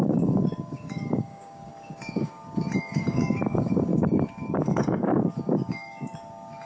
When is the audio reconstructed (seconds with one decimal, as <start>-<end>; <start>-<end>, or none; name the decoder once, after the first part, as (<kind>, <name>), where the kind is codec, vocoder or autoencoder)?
0.0-6.7 (codec, DAC)